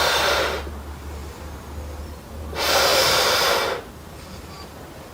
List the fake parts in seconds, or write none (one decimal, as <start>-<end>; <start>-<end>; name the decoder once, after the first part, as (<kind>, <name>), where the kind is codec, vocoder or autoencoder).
none